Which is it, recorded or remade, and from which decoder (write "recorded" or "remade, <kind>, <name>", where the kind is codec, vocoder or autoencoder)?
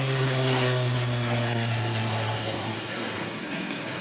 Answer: remade, codec, SNAC